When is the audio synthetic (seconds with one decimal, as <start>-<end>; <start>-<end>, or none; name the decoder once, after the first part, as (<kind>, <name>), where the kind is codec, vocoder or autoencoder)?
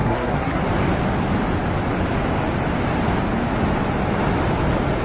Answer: 0.0-0.6 (codec, SNAC)